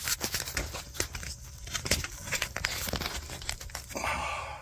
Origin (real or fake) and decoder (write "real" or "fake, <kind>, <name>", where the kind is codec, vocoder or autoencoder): real